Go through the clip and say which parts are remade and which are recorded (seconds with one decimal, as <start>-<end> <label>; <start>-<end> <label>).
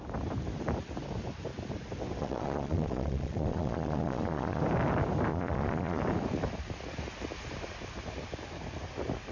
0.0-2.2 recorded; 2.2-4.6 remade; 4.6-5.3 recorded; 5.3-6.0 remade; 6.0-9.3 recorded